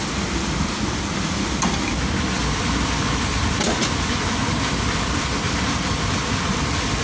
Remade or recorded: recorded